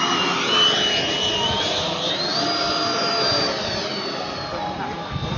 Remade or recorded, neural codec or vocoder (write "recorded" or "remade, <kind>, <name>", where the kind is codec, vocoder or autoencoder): recorded